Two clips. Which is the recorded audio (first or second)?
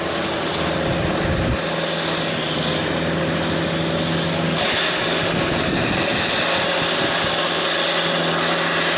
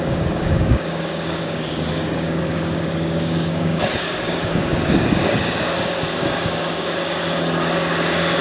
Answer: first